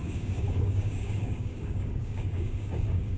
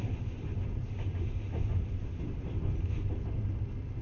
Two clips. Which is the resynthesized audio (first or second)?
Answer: first